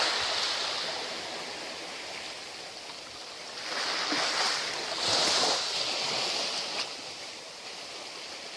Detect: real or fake real